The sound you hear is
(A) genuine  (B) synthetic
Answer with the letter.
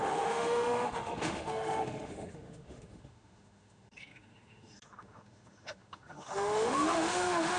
B